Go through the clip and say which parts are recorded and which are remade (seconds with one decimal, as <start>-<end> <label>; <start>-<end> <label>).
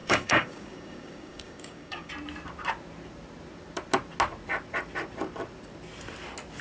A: 0.0-2.1 remade; 2.1-6.6 recorded